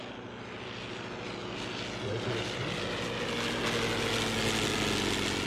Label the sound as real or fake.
real